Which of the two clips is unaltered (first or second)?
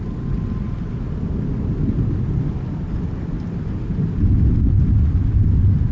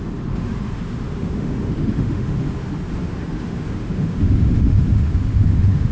first